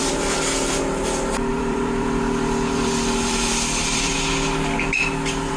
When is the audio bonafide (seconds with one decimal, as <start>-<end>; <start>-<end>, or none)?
0.8-1.5; 4.3-5.6